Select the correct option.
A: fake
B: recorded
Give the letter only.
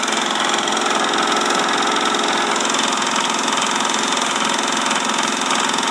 B